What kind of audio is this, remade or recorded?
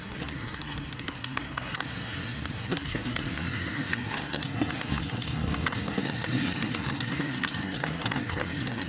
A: remade